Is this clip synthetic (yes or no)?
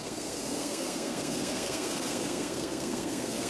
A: yes